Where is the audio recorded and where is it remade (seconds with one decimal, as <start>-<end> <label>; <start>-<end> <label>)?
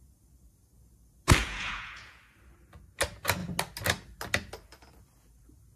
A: 0.0-1.4 recorded; 1.4-2.2 remade; 2.2-5.8 recorded